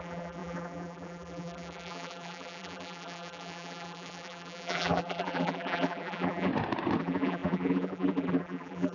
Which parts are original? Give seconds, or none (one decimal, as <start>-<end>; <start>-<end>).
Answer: 6.5-7.0